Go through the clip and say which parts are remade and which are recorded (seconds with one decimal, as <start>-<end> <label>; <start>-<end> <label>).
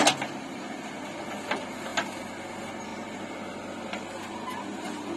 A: 0.0-5.2 recorded